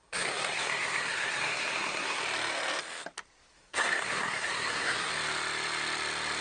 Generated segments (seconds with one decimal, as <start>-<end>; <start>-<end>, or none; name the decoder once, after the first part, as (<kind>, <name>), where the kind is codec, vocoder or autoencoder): 0.0-2.2 (codec, SNAC); 3.5-5.1